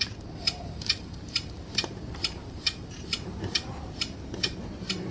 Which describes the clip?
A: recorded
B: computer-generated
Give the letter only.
B